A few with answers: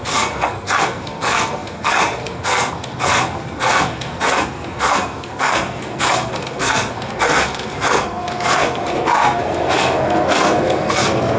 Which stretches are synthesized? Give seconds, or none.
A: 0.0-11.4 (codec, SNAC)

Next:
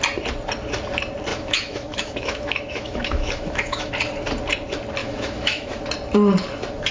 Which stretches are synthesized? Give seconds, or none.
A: 1.3-3.9 (autoencoder, DAC-VAE); 5.0-5.8

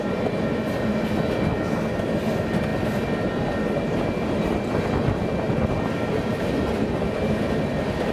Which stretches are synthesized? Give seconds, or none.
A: none

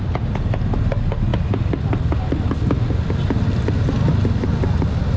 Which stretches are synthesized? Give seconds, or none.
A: none

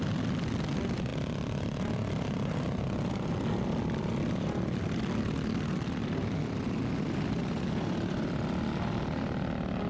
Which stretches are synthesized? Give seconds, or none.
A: none